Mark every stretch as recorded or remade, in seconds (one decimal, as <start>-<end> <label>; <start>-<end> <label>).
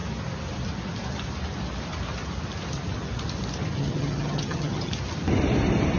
0.0-3.8 recorded; 3.8-4.9 remade; 4.9-6.0 recorded